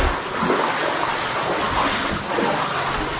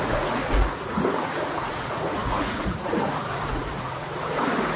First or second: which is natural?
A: first